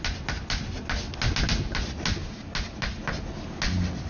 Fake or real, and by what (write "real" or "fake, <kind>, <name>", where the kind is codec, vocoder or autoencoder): real